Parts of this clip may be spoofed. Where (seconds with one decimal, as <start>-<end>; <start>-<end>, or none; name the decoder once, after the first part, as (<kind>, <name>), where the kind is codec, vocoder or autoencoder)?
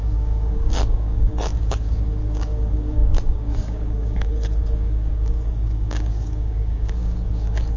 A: 0.0-7.8 (codec, DAC)